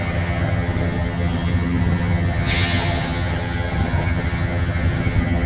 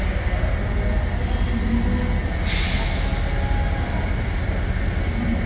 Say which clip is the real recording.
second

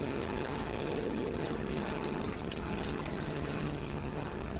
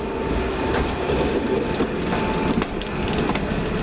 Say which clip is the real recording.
second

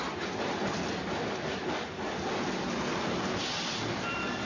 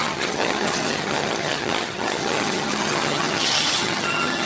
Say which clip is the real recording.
first